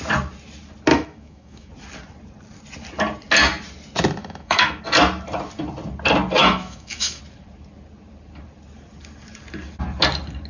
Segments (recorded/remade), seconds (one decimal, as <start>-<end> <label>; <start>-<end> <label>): 0.0-0.9 recorded; 0.9-1.7 remade; 1.7-4.2 recorded; 4.2-4.8 remade; 4.8-6.4 recorded; 6.4-7.2 remade; 7.2-10.5 recorded